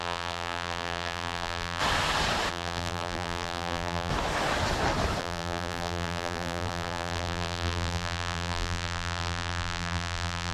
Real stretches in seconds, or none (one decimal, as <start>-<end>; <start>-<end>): 1.8-2.5; 4.1-5.2